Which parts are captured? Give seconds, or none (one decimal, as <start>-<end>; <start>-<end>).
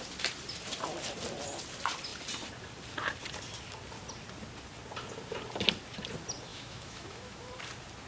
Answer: 0.0-6.5; 7.4-8.1